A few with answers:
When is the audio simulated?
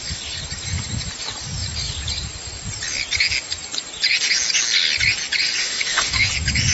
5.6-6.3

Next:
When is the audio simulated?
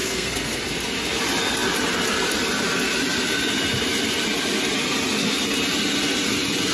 0.0-0.6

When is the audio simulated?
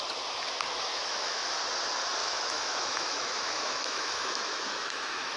0.9-1.5; 2.2-5.4